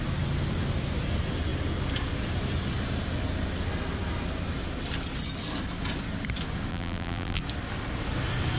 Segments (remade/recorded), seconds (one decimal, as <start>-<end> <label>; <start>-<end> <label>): 0.0-6.7 recorded; 6.7-7.4 remade; 7.4-8.6 recorded